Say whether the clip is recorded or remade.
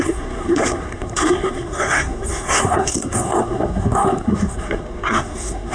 remade